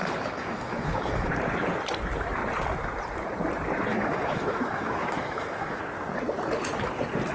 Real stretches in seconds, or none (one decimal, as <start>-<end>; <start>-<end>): 1.3-3.9; 5.8-7.3